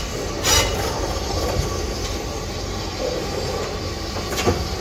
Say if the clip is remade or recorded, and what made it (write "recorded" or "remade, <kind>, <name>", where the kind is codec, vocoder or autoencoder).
recorded